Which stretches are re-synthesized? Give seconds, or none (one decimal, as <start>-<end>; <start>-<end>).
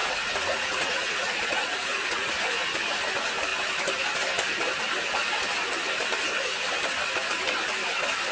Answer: 0.0-2.3